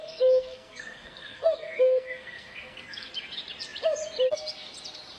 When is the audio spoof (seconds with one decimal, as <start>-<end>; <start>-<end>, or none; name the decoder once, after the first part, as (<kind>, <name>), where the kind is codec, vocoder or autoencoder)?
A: 0.0-3.1 (codec, SNAC)